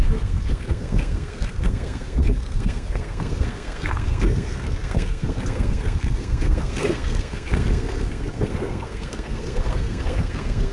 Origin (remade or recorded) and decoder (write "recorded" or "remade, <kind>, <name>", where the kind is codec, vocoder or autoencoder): remade, codec, SNAC